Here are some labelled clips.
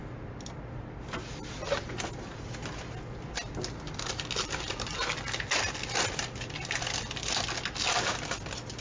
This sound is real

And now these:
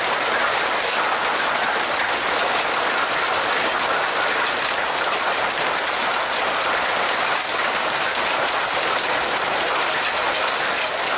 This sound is real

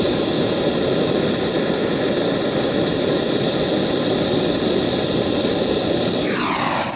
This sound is real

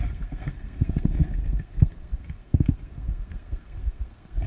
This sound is fake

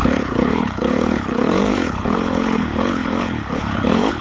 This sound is fake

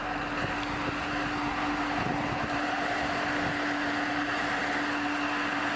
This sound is real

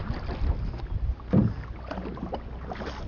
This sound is real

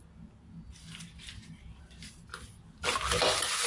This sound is real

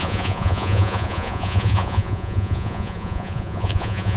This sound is fake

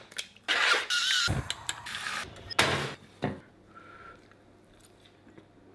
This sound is real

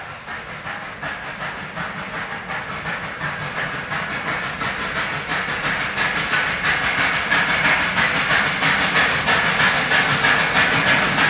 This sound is real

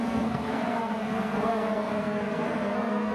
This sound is fake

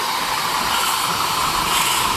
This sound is fake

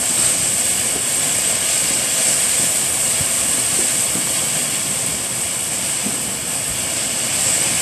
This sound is real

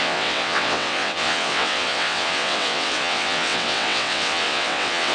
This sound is fake